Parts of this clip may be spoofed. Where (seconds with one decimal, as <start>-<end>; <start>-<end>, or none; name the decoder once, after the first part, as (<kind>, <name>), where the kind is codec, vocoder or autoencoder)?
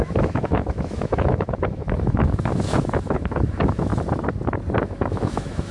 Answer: 0.0-3.9 (autoencoder, DAC-VAE); 4.8-5.7